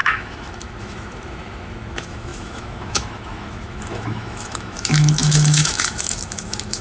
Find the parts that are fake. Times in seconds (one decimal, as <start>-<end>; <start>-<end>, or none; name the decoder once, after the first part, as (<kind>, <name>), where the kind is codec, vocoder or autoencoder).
0.0-6.8 (autoencoder, DAC-VAE)